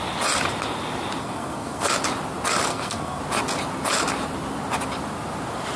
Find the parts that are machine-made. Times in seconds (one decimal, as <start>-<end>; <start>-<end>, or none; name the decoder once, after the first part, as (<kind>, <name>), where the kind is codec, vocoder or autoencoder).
1.2-1.9 (codec, SNAC); 2.7-3.2